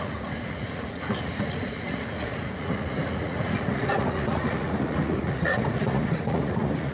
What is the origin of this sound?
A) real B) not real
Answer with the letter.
B